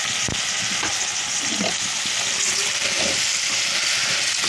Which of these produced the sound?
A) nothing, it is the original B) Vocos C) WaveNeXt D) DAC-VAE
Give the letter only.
A